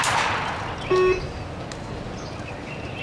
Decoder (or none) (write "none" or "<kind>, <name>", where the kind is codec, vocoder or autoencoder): none